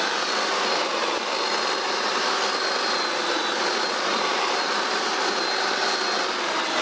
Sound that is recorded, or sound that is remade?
recorded